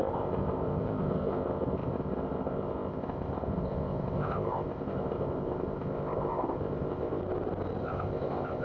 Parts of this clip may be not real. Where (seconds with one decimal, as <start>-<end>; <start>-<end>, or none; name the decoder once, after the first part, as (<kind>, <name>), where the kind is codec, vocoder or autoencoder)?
0.0-7.2 (codec, ZipCodec); 7.8-8.6

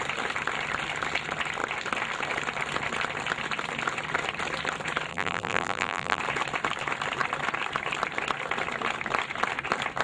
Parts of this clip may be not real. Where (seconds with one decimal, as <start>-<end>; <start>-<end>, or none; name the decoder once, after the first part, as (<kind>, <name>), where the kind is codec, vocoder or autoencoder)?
5.1-6.2 (vocoder, BigVGAN v2)

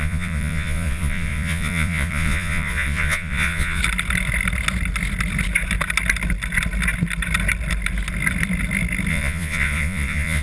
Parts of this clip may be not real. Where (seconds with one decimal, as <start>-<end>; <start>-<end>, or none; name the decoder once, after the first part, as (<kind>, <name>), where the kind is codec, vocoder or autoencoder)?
0.0-3.8 (vocoder, Vocos); 9.1-10.4

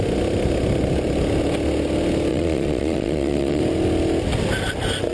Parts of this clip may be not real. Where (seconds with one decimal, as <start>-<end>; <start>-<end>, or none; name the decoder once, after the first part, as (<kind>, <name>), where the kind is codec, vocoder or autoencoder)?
2.3-3.6 (vocoder, Vocos)

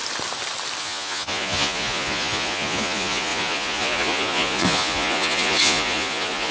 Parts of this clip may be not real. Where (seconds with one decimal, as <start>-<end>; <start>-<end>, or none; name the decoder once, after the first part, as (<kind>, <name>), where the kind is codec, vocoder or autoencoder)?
0.8-6.5 (vocoder, Vocos)